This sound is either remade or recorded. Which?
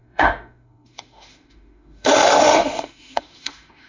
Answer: remade